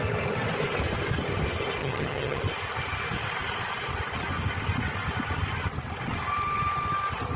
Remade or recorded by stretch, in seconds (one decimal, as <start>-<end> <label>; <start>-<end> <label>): 0.0-1.8 recorded; 1.8-2.4 remade; 2.4-7.4 recorded